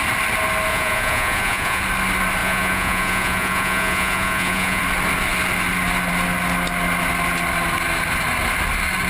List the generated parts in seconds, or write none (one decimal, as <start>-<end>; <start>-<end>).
0.7-1.8; 2.4-4.8